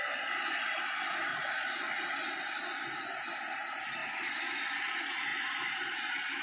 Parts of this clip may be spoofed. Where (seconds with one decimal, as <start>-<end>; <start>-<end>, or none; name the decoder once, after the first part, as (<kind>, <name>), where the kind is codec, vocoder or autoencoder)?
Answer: 1.3-1.8 (vocoder, Vocos)

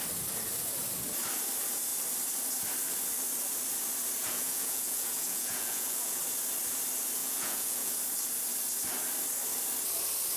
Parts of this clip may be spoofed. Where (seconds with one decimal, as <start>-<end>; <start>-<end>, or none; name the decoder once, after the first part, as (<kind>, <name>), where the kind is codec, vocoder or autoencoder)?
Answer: 4.2-6.2 (vocoder, Vocos); 7.2-8.0

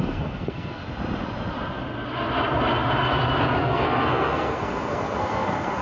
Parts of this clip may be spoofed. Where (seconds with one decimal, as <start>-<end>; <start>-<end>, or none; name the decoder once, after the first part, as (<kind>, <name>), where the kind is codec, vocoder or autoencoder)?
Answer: 0.0-0.8 (codec, SNAC); 3.6-5.8

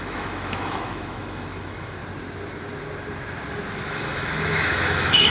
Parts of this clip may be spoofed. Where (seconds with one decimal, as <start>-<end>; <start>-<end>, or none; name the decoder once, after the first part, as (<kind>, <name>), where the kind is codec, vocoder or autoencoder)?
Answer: 0.0-2.0 (autoencoder, DAC-VAE); 3.9-5.3

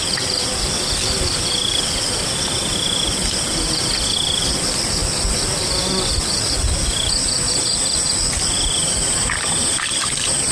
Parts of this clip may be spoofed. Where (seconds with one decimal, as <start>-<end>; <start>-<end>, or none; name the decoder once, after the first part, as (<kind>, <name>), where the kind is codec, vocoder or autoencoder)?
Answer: none